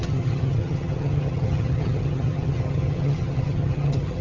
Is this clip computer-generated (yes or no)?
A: yes